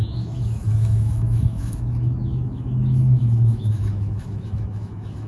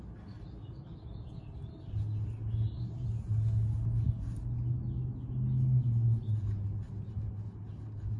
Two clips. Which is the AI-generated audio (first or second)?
first